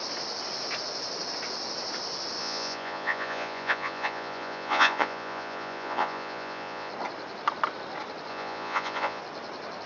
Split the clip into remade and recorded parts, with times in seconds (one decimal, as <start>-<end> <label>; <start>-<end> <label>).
0.0-2.4 recorded; 2.4-6.9 remade; 6.9-8.3 recorded; 8.3-9.2 remade; 9.2-9.9 recorded